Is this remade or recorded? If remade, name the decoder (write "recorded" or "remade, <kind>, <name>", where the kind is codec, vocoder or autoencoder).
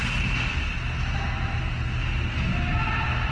recorded